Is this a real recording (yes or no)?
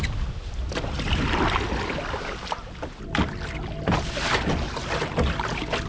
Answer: yes